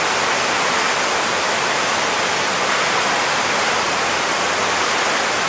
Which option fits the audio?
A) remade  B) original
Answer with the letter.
B